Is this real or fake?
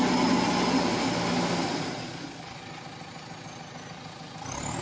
real